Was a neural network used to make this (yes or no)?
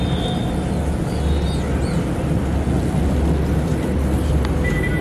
no